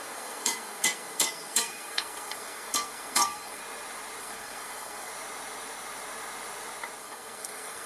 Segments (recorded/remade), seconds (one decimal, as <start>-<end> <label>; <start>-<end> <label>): 0.0-3.6 remade; 3.6-4.2 recorded; 4.2-5.1 remade; 5.1-7.0 recorded; 7.0-7.9 remade